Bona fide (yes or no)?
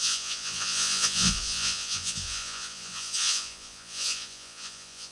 no